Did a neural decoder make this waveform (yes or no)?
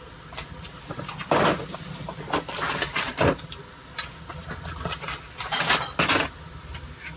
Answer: no